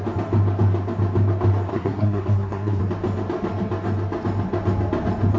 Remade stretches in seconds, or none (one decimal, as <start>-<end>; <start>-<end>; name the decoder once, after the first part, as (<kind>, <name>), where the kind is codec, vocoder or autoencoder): 1.7-2.8 (codec, SNAC)